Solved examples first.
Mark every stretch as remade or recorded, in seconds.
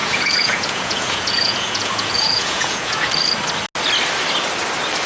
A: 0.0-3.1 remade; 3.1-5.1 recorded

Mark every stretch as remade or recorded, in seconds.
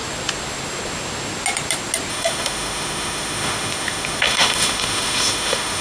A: 0.0-2.1 recorded; 2.1-5.8 remade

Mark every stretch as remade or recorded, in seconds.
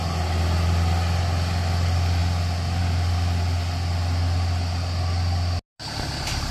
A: 0.0-6.5 recorded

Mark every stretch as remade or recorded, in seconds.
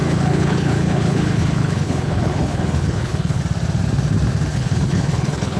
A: 0.0-3.4 remade; 3.4-4.5 recorded; 4.5-5.6 remade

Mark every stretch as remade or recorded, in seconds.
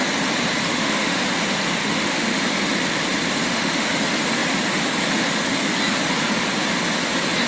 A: 0.0-0.7 recorded; 0.7-1.2 remade; 1.2-1.8 recorded; 1.8-2.4 remade; 2.4-3.5 recorded; 3.5-4.0 remade; 4.0-7.5 recorded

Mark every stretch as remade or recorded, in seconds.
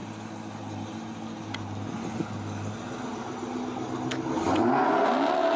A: 0.0-5.6 recorded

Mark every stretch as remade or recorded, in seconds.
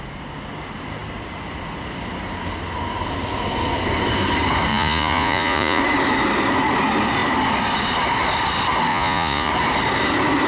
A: 0.0-4.7 recorded; 4.7-5.8 remade; 5.8-8.9 recorded; 8.9-9.5 remade; 9.5-10.5 recorded